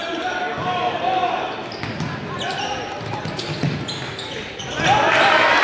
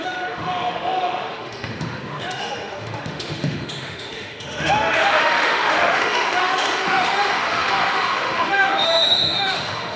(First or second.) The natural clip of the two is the first